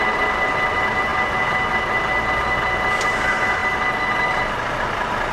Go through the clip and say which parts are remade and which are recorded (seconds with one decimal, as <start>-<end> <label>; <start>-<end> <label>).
0.0-5.3 recorded